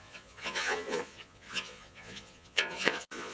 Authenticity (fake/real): fake